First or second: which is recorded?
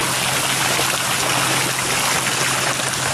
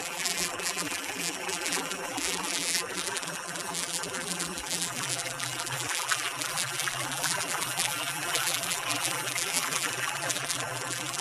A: first